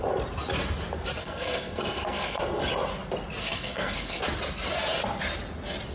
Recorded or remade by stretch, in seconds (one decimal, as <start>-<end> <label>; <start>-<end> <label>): 0.0-1.2 recorded; 1.2-2.4 remade; 2.4-3.4 recorded; 3.4-4.2 remade; 4.2-5.9 recorded